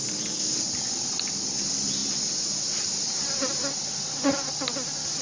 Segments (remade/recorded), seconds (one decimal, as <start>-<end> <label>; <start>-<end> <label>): 0.0-5.2 recorded